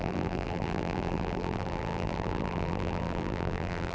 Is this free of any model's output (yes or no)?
no